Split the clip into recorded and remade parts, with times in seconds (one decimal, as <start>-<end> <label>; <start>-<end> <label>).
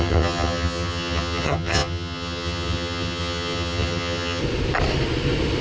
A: 0.0-4.4 remade; 4.4-5.6 recorded